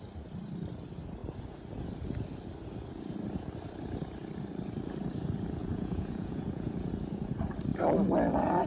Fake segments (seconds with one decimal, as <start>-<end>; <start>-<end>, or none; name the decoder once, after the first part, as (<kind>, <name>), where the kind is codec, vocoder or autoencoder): 5.6-6.9 (vocoder, Vocos)